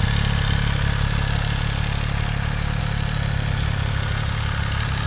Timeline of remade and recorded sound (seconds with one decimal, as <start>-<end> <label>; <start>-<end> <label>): 0.0-5.1 recorded